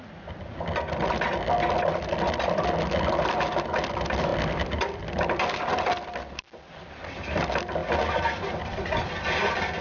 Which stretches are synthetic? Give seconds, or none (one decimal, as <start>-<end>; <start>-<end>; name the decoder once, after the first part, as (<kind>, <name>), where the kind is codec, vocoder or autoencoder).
0.0-7.8 (vocoder, BigVGAN v2); 9.2-9.8